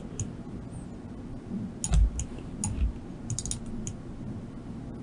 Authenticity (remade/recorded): recorded